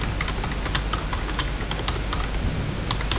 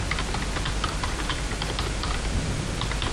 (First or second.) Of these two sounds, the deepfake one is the second